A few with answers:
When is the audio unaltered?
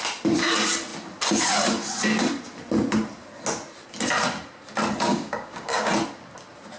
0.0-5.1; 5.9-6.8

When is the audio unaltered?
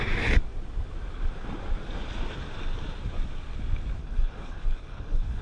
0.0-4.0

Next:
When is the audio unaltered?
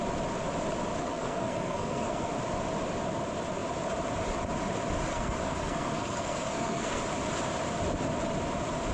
0.0-1.0; 2.3-5.1; 7.0-8.9